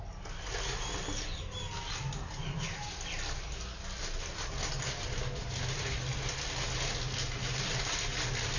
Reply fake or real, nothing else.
real